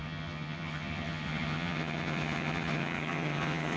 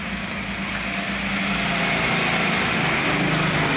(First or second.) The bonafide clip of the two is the second